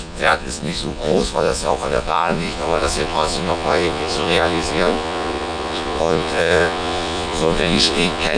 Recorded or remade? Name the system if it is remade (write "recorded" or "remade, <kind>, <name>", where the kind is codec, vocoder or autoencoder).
remade, vocoder, Vocos